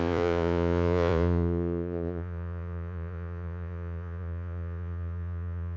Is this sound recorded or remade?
remade